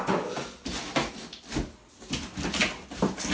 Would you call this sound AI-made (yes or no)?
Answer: no